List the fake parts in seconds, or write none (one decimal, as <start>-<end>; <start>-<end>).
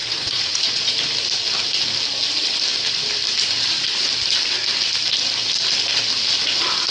0.0-0.9